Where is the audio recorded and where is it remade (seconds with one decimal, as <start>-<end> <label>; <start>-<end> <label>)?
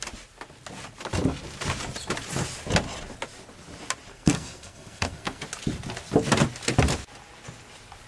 0.0-4.1 recorded; 4.1-5.4 remade; 5.4-8.1 recorded